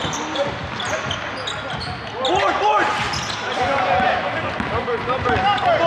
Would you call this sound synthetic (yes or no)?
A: no